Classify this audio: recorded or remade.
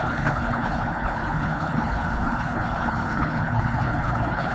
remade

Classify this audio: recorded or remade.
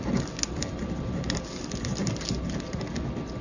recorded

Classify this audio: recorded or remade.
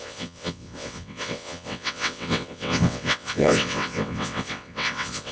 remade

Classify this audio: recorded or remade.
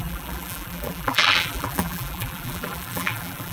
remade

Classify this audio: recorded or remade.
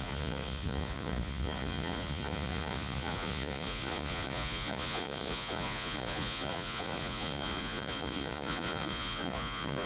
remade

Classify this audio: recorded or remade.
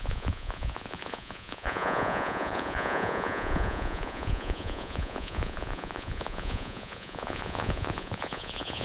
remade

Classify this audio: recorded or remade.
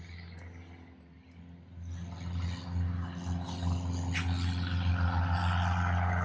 recorded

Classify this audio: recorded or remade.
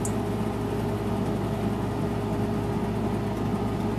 recorded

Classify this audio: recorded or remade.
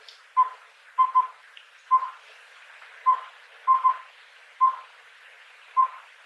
recorded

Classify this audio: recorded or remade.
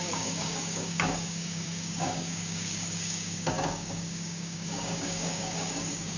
remade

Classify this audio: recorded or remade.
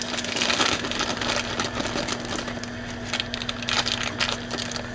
recorded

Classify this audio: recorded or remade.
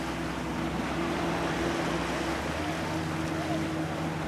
recorded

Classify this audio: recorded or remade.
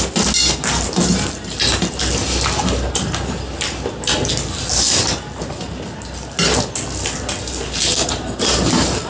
recorded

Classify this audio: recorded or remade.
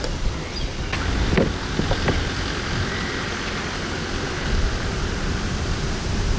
recorded